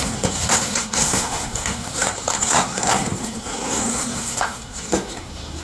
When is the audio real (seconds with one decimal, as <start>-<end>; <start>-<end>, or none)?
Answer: none